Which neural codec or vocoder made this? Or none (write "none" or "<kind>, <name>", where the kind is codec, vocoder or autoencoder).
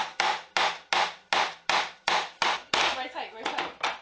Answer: none